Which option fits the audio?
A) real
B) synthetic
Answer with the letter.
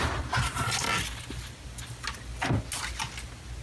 A